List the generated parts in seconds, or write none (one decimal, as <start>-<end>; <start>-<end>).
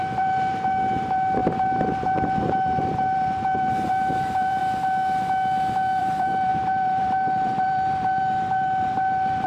0.0-4.6; 6.0-9.5